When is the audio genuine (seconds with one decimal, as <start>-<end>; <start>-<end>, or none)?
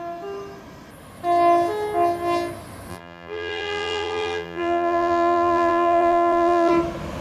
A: 0.0-2.9; 6.7-7.2